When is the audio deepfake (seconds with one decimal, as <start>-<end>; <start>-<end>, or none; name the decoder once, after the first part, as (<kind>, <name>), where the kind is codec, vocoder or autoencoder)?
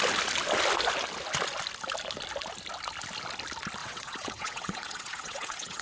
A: 3.8-5.8 (vocoder, WaveNeXt)